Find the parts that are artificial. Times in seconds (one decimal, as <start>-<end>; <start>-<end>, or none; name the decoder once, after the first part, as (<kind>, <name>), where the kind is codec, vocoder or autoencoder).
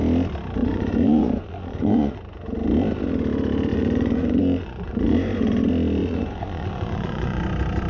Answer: 0.6-2.2 (vocoder, Vocos); 3.7-5.6; 6.0-7.4